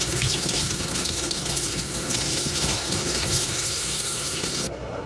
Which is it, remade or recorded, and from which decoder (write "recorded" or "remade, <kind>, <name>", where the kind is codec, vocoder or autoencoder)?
remade, codec, SNAC